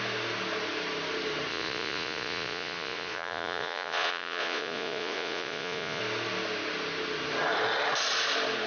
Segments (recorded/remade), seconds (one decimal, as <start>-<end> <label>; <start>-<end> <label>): 0.0-1.5 recorded; 1.5-6.0 remade; 6.0-8.7 recorded

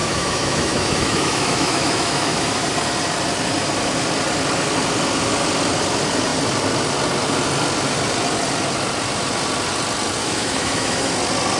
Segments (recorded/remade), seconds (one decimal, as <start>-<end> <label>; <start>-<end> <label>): 0.0-2.6 remade; 2.6-10.2 recorded; 10.2-11.1 remade; 11.1-11.6 recorded